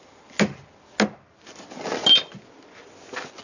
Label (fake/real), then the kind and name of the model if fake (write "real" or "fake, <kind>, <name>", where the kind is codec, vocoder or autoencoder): real